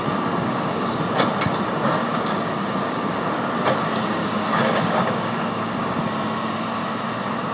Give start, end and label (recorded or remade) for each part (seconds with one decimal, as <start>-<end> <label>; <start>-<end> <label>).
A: 0.0-0.4 recorded; 0.4-1.0 remade; 1.0-2.0 recorded; 2.0-3.1 remade; 3.1-4.2 recorded; 4.2-6.0 remade; 6.0-7.5 recorded